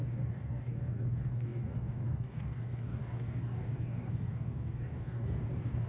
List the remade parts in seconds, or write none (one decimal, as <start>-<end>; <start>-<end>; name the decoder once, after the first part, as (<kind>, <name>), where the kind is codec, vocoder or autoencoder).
0.0-5.9 (codec, DAC)